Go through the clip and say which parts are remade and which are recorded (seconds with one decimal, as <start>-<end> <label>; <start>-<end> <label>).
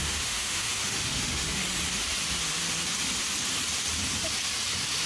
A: 0.0-1.6 remade; 1.6-5.1 recorded